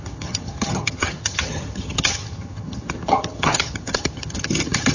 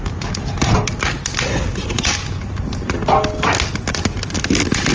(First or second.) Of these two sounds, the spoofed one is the first